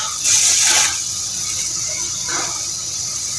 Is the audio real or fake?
fake